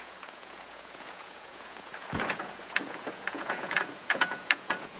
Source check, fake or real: fake